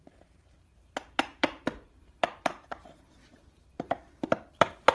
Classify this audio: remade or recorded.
remade